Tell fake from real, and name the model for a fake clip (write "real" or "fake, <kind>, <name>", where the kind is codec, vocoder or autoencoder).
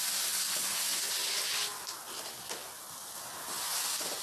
real